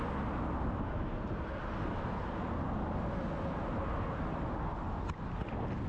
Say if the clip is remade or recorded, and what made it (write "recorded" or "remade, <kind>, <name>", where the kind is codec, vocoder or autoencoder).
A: recorded